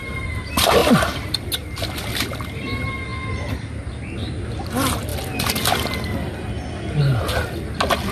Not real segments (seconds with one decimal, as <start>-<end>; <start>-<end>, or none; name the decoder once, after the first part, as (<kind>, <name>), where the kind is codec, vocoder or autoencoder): none